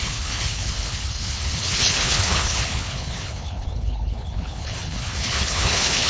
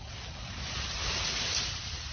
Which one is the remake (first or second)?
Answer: first